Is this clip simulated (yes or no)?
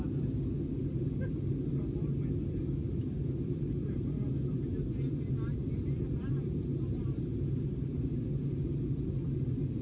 no